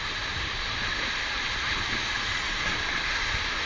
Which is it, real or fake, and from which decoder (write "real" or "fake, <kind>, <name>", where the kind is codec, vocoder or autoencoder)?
fake, vocoder, BigVGAN v2